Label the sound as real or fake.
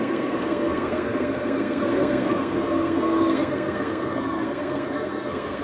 fake